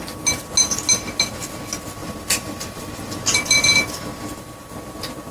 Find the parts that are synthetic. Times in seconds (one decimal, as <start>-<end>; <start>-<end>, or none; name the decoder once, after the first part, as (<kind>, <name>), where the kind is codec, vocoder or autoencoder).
2.0-3.9 (vocoder, BigVGAN v2)